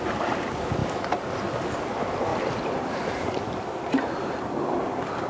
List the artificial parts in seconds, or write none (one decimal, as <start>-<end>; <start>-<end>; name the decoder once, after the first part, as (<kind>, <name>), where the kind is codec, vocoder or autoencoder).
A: none